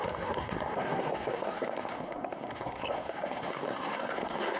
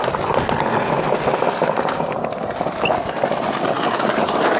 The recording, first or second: second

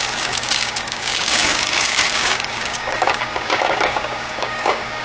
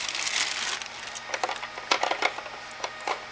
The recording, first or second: second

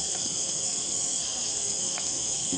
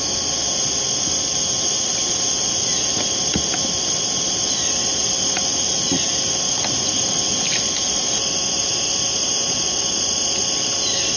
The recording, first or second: second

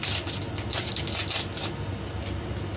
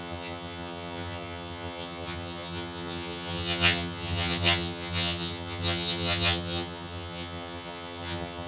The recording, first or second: first